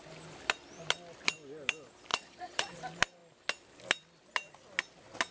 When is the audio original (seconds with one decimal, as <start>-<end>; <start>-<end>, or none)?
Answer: 0.0-2.1; 2.8-5.3